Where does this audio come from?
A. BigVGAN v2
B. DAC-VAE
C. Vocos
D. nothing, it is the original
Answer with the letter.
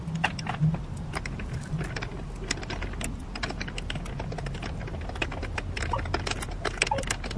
D